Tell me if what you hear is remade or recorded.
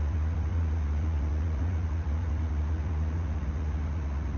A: remade